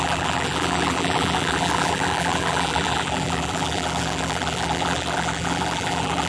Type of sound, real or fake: fake